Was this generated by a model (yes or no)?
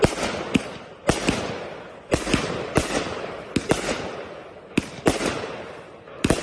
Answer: no